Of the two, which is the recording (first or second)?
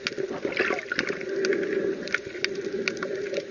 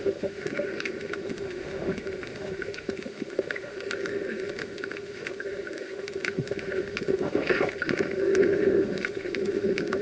first